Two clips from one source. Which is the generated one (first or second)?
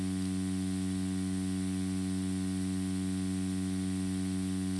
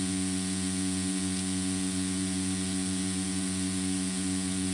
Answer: second